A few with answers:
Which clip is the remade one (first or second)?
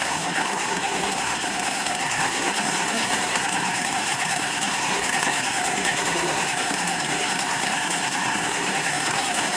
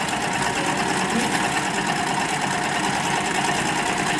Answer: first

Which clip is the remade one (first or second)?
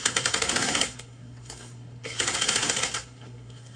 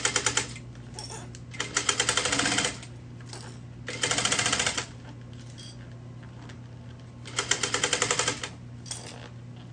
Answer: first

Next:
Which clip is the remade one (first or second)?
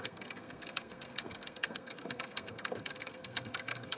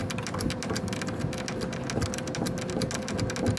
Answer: first